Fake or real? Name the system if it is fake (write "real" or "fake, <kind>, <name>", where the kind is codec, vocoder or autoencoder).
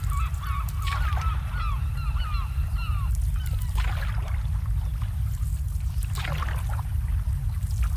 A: real